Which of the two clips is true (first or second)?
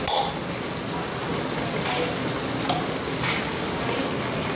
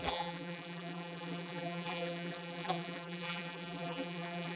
first